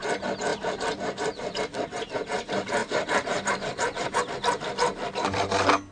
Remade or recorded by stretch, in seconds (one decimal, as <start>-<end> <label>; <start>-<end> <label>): 0.0-0.5 recorded; 0.5-1.6 remade; 1.6-2.8 recorded; 2.8-4.2 remade; 4.2-5.9 recorded